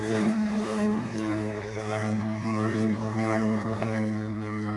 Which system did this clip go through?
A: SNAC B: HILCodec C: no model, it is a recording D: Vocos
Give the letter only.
A